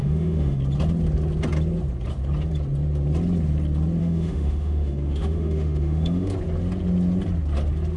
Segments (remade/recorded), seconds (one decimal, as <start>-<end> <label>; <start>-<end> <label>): 0.0-0.6 remade; 0.6-4.0 recorded; 4.0-6.3 remade; 6.3-8.0 recorded